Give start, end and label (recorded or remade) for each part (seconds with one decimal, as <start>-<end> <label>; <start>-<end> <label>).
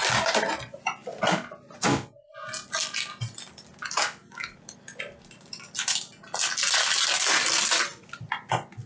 0.0-8.9 recorded